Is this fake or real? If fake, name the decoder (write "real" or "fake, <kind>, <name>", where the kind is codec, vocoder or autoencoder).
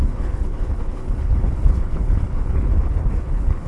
fake, codec, HILCodec